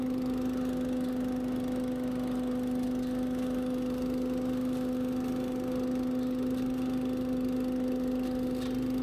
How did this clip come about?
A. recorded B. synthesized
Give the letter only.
A